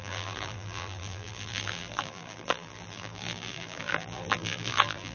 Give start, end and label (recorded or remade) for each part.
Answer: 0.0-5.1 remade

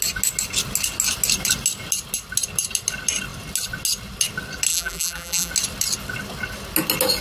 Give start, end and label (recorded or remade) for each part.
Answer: 0.0-4.7 recorded; 4.7-5.5 remade; 5.5-7.2 recorded

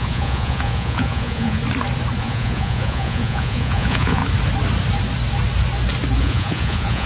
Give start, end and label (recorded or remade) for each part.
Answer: 0.0-1.6 remade; 1.6-2.2 recorded; 2.2-4.2 remade; 4.2-6.2 recorded; 6.2-7.1 remade

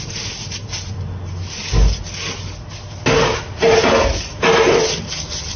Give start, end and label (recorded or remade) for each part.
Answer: 0.0-5.6 recorded

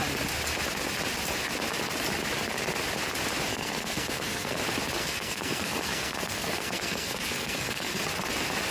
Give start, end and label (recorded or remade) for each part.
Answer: 0.0-3.5 recorded; 3.5-4.6 remade; 4.6-5.0 recorded; 5.0-8.0 remade; 8.0-8.7 recorded